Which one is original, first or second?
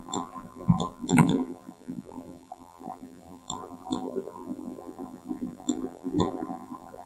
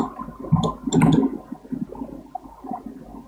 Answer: second